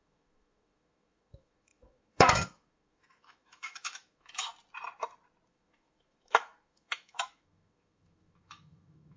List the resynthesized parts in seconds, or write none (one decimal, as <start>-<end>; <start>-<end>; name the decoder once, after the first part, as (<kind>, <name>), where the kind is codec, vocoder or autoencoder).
0.0-4.5 (autoencoder, DAC-VAE); 5.5-9.2